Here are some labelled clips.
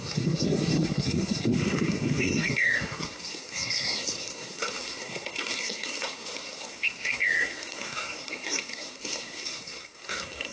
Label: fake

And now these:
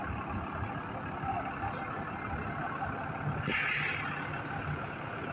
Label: real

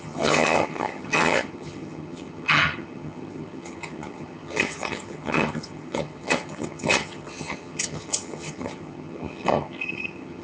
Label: fake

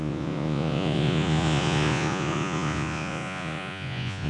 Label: fake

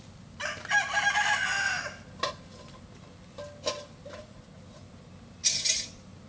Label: real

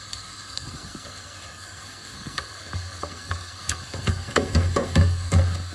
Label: fake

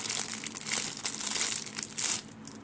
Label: real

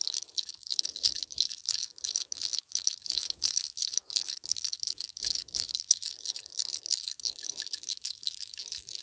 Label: fake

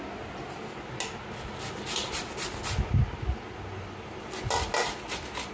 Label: real